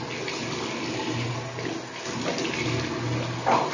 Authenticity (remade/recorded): recorded